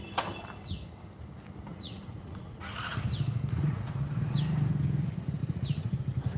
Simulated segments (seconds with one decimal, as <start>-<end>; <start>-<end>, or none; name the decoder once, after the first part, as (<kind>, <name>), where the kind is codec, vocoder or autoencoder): 1.7-3.0 (vocoder, Vocos); 3.6-4.4; 5.4-6.0